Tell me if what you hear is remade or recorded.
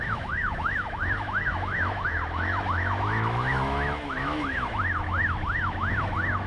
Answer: remade